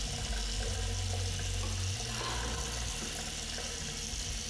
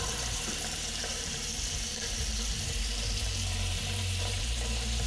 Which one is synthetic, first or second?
second